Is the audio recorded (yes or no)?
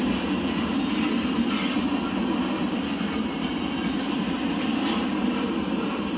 yes